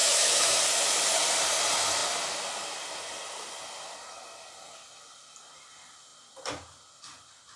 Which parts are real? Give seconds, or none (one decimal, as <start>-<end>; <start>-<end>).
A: 0.6-7.6